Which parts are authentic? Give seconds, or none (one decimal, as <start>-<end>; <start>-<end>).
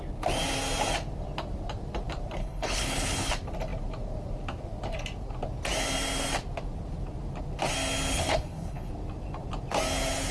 0.0-2.4; 3.3-8.1; 8.9-10.3